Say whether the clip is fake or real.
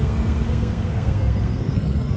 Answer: fake